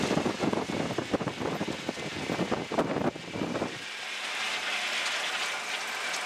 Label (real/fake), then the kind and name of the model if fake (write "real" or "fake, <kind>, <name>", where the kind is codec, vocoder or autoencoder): real